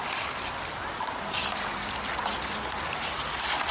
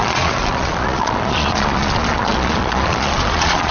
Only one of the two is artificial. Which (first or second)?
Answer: second